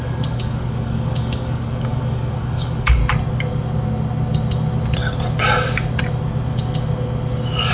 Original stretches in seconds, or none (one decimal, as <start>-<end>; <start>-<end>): 3.0-7.7